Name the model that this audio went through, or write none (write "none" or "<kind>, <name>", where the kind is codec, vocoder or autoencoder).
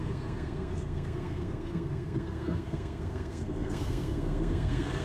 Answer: codec, SNAC